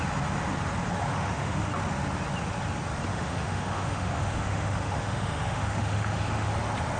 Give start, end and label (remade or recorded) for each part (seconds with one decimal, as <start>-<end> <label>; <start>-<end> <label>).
0.0-1.1 recorded; 1.1-1.7 remade; 1.7-3.1 recorded; 3.1-6.5 remade; 6.5-7.0 recorded